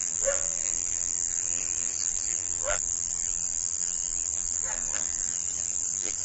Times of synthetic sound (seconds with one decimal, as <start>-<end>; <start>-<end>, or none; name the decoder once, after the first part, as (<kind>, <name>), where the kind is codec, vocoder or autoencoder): 0.0-6.2 (vocoder, BigVGAN v2)